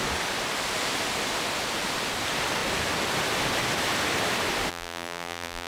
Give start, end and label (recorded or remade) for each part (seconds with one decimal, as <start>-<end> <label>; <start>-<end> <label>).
0.0-4.7 recorded; 4.7-5.7 remade